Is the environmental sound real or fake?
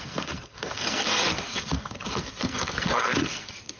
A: fake